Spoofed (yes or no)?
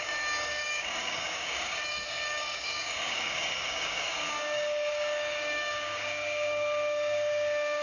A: yes